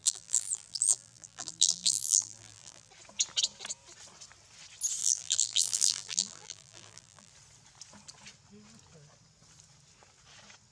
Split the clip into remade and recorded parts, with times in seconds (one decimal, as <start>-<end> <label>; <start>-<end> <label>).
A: 0.0-2.9 remade; 2.9-5.0 recorded; 5.0-7.3 remade; 7.3-10.7 recorded